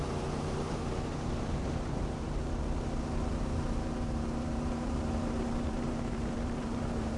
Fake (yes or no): yes